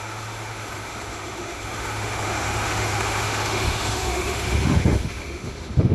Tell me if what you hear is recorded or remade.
remade